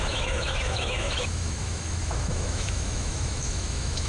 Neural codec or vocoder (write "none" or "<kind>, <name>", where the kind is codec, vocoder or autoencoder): autoencoder, DAC-VAE